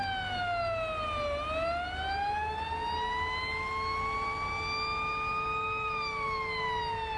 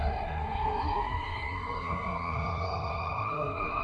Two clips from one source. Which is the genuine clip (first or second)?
first